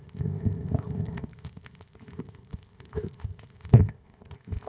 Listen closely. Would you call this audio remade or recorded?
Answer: remade